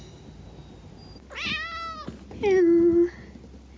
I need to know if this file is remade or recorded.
recorded